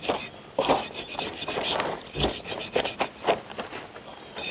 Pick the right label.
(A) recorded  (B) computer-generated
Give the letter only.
A